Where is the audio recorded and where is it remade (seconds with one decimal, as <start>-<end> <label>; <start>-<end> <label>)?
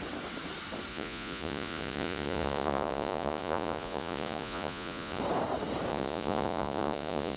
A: 0.0-0.9 recorded; 0.9-5.2 remade; 5.2-5.9 recorded; 5.9-7.4 remade